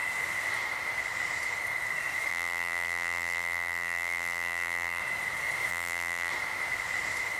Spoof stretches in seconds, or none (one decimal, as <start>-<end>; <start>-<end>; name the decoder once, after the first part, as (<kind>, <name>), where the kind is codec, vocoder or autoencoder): 2.3-5.0 (vocoder, BigVGAN v2); 5.7-6.3